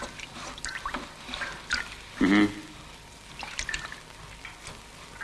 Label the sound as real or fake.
real